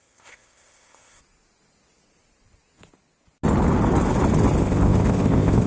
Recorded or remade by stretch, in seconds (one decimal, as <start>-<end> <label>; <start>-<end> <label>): 0.0-1.2 remade; 1.2-4.6 recorded; 4.6-5.7 remade